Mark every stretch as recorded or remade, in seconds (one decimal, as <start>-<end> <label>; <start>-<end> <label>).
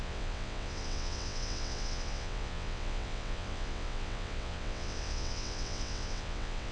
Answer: 0.0-6.7 remade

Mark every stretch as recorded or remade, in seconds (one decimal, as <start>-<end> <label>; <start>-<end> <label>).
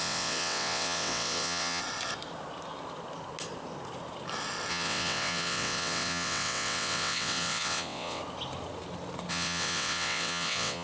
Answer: 0.0-1.8 remade; 1.8-4.7 recorded; 4.7-8.2 remade; 8.2-9.3 recorded; 9.3-10.8 remade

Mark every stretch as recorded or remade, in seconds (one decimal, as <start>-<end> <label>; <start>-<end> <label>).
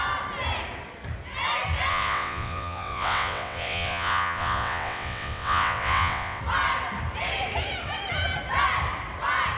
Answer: 0.0-1.9 recorded; 1.9-6.4 remade; 6.4-9.6 recorded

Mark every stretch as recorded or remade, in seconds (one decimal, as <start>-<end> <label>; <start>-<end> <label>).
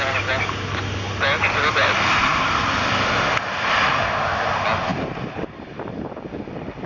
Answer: 0.0-6.9 recorded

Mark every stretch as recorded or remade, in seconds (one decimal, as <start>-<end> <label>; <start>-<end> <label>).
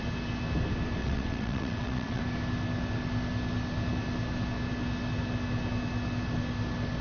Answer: 0.0-1.0 recorded; 1.0-2.2 remade; 2.2-7.0 recorded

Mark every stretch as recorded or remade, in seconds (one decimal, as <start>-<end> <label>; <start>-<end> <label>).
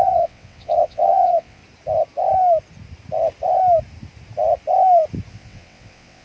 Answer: 0.0-1.6 remade; 1.6-5.3 recorded; 5.3-6.2 remade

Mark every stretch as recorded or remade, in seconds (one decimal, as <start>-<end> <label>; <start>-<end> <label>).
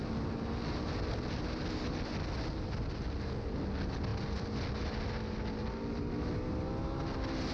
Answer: 0.0-7.5 recorded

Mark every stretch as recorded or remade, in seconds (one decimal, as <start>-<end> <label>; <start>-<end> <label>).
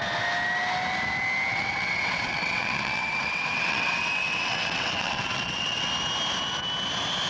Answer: 0.0-1.5 recorded; 1.5-5.9 remade; 5.9-7.3 recorded